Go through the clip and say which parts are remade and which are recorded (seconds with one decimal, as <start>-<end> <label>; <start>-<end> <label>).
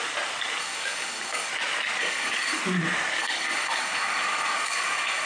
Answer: 0.0-0.6 recorded; 0.6-1.5 remade; 1.5-2.0 recorded; 2.0-2.6 remade; 2.6-3.2 recorded; 3.2-5.3 remade